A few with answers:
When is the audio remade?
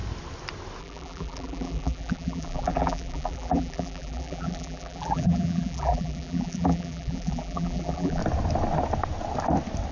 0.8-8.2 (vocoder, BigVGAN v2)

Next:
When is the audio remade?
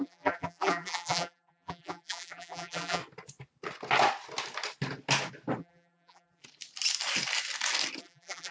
0.0-3.0 (vocoder, BigVGAN v2); 5.6-6.4; 8.0-8.5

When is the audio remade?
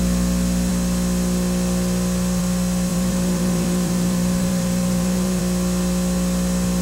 2.9-5.4 (vocoder, BigVGAN v2)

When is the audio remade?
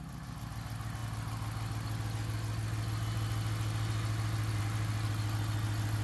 none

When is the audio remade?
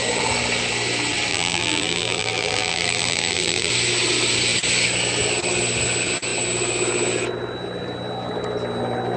1.3-3.7 (vocoder, BigVGAN v2)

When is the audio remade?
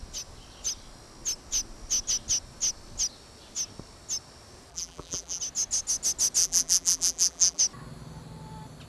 4.7-5.4 (vocoder, BigVGAN v2); 6.4-7.6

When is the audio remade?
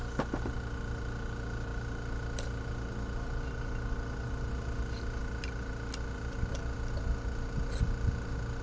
none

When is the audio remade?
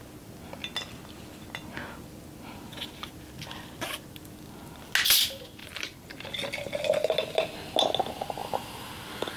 5.6-6.1 (vocoder, BigVGAN v2); 8.4-8.9